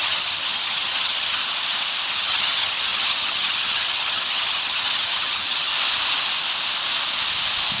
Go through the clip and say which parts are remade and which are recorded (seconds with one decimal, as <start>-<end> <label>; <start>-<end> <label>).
0.0-1.4 remade; 1.4-2.1 recorded; 2.1-5.7 remade; 5.7-7.8 recorded